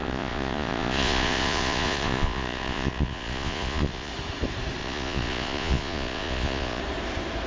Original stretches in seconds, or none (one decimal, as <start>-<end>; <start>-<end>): 4.1-4.8; 6.8-7.5